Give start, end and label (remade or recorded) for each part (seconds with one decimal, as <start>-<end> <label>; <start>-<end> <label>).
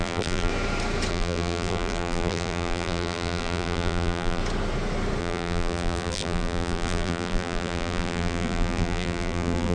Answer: 0.0-0.5 remade; 0.5-1.1 recorded; 1.1-4.4 remade; 4.4-5.2 recorded; 5.2-9.7 remade